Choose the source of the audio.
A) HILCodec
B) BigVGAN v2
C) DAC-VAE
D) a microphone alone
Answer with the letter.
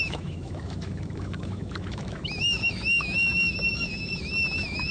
C